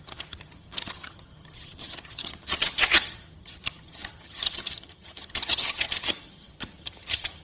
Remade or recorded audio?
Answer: remade